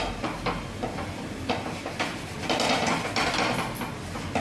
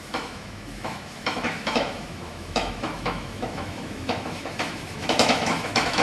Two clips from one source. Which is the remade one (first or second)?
second